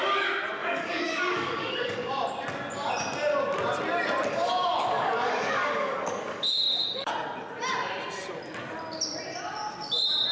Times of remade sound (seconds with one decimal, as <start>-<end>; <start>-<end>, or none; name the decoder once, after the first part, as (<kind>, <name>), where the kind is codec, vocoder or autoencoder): 0.6-2.1 (codec, DAC); 4.3-7.1

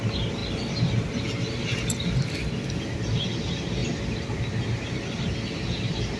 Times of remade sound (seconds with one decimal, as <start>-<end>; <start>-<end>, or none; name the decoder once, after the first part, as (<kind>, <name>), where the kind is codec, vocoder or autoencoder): none

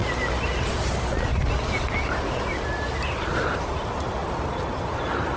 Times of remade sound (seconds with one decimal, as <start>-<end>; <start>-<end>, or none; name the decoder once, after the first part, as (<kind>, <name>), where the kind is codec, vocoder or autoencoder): 3.2-4.2 (vocoder, BigVGAN v2); 4.8-5.4